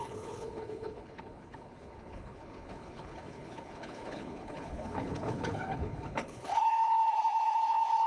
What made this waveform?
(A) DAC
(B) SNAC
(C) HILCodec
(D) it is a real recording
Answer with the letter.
C